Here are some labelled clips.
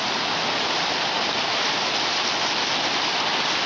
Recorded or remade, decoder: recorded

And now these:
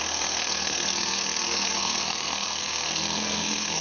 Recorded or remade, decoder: remade, codec, SNAC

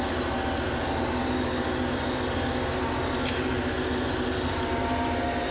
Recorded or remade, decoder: recorded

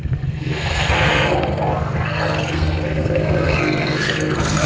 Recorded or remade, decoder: remade, codec, SNAC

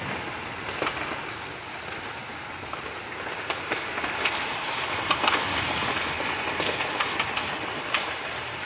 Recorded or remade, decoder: recorded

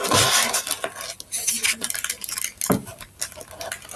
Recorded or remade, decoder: recorded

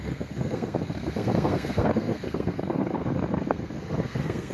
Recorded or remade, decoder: remade, codec, SNAC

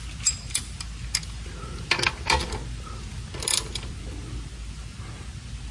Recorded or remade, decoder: recorded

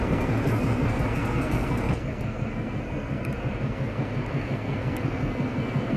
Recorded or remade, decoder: remade, codec, SNAC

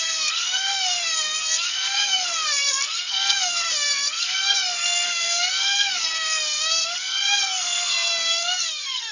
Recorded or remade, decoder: remade, codec, SNAC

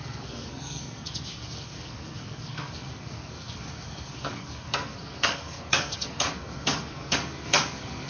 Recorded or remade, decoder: remade, codec, SNAC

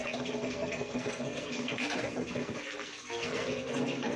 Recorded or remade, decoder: remade, codec, SNAC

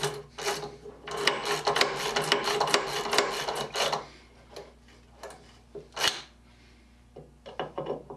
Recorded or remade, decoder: recorded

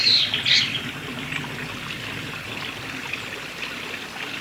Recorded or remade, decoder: recorded